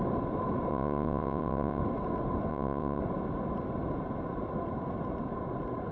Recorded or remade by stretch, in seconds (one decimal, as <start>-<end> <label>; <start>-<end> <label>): 0.0-0.7 recorded; 0.7-1.8 remade; 1.8-2.5 recorded; 2.5-3.0 remade; 3.0-5.9 recorded